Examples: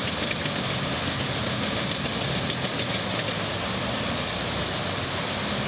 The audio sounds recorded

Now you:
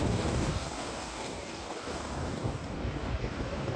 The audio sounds remade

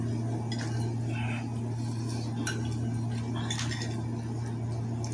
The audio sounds recorded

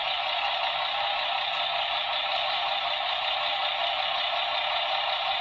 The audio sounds recorded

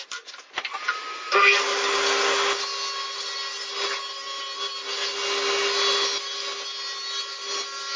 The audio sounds recorded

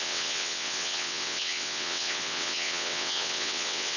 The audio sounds remade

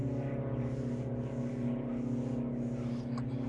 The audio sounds recorded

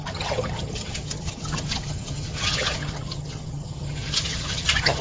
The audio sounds remade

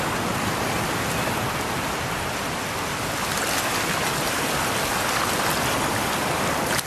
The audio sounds recorded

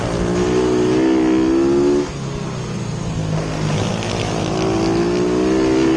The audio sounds recorded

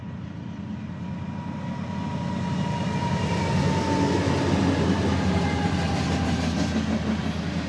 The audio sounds recorded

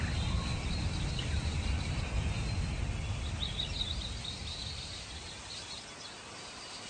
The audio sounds recorded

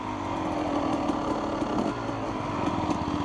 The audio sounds recorded